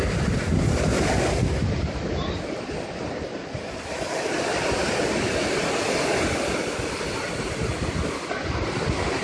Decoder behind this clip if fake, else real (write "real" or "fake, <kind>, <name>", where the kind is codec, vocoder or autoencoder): real